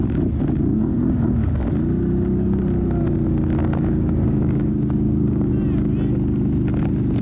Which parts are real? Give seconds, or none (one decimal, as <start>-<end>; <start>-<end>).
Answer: 0.0-0.7; 1.7-3.6; 5.5-7.2